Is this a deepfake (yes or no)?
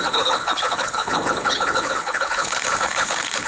yes